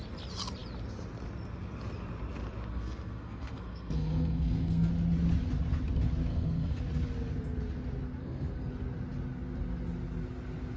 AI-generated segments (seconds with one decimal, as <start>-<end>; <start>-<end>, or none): 2.7-4.9; 6.3-6.8; 8.2-8.7